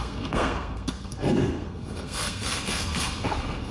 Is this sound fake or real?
fake